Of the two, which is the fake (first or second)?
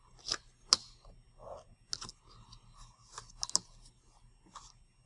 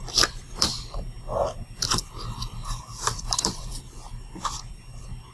second